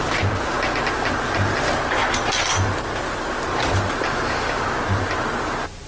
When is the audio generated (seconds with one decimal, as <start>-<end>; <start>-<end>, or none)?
none